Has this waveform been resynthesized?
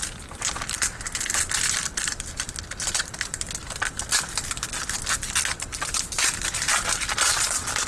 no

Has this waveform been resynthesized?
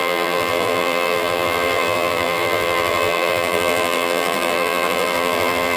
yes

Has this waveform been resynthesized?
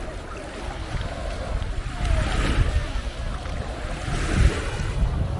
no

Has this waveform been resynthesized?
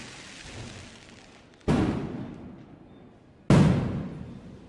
no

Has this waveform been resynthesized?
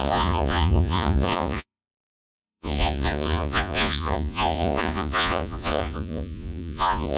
yes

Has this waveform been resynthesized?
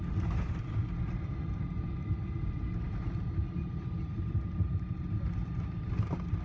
no